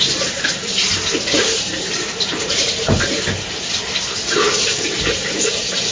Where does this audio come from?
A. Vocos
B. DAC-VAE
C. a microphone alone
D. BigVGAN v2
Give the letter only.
D